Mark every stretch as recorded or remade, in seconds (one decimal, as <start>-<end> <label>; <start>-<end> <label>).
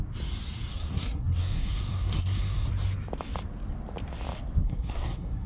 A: 0.0-0.7 recorded; 0.7-2.7 remade; 2.7-4.6 recorded; 4.6-5.5 remade